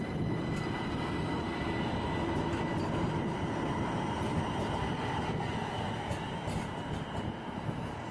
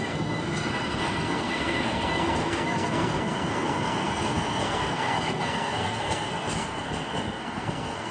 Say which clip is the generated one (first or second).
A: second